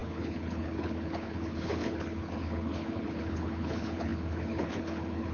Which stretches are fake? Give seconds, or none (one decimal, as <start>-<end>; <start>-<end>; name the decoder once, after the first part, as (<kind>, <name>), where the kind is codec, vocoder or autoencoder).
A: 0.0-5.3 (codec, HILCodec)